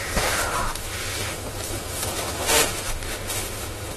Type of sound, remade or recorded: remade